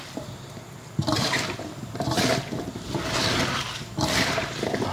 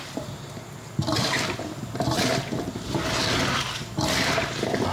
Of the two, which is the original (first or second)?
second